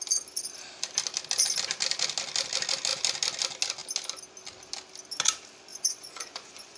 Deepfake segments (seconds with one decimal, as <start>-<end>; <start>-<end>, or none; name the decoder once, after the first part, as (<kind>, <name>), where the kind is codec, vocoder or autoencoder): 5.7-6.8 (vocoder, Vocos)